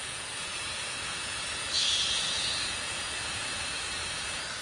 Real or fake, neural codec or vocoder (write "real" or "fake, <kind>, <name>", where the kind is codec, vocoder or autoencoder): fake, vocoder, Vocos